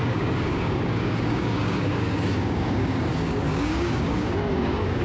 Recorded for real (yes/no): no